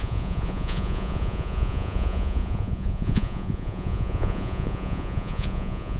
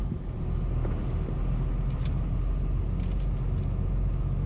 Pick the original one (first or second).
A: second